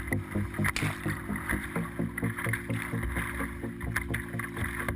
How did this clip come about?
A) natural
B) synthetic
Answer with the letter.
A